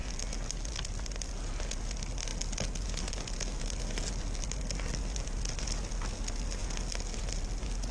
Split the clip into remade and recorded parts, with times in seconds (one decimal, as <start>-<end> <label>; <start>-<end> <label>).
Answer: 0.0-7.9 recorded